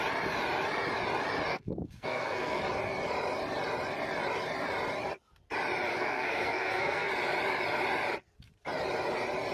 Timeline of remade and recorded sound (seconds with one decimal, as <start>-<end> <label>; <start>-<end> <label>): 0.0-1.5 recorded; 1.5-2.6 remade; 2.6-5.9 recorded; 5.9-7.1 remade; 7.1-9.5 recorded